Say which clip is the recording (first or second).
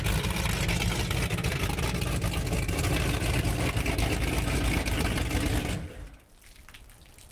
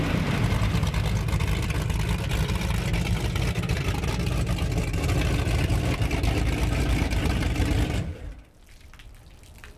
first